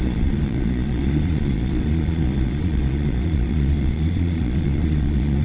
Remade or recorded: remade